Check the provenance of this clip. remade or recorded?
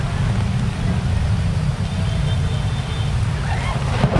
remade